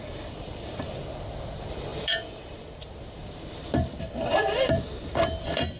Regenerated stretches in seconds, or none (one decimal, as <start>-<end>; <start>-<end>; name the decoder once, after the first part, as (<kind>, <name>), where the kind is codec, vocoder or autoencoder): 0.0-5.8 (vocoder, BigVGAN v2)